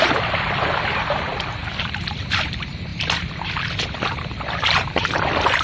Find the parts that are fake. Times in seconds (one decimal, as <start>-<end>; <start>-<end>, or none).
0.0-1.6; 2.1-5.6